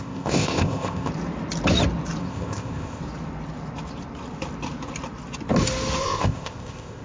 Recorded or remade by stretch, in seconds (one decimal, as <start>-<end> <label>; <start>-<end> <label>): 0.0-1.1 remade; 1.1-2.2 recorded; 2.2-3.0 remade; 3.0-6.0 recorded; 6.0-7.0 remade